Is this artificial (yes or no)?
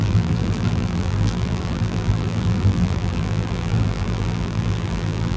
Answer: yes